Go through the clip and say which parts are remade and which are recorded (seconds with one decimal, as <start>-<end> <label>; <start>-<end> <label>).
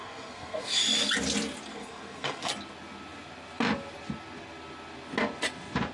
0.0-0.8 remade; 0.8-1.7 recorded; 1.7-2.5 remade; 2.5-5.9 recorded